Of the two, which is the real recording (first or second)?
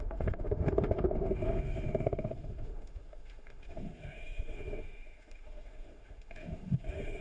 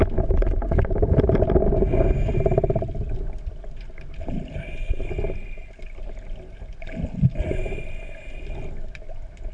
second